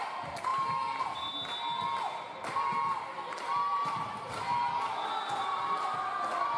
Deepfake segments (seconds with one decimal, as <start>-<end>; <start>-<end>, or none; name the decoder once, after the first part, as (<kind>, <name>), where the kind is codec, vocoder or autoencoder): none